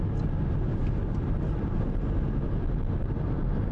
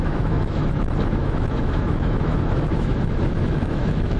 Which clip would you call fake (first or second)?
second